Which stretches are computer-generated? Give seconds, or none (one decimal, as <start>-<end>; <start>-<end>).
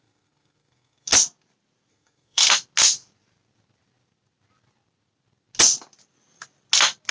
0.0-1.1; 1.9-2.4